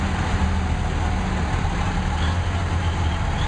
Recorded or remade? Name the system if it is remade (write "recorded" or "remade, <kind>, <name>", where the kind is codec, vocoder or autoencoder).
recorded